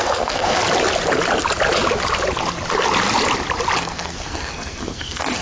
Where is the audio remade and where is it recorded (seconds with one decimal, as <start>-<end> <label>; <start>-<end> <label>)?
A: 0.0-0.6 remade; 0.6-3.8 recorded; 3.8-5.4 remade